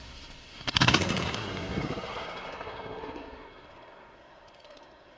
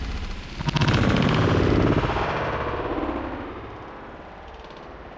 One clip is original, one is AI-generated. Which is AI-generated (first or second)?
first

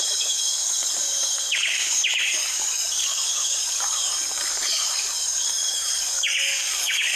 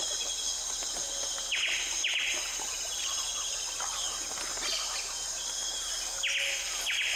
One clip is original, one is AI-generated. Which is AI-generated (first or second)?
first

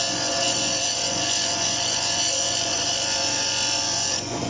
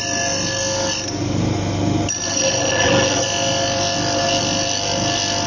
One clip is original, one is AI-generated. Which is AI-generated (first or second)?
first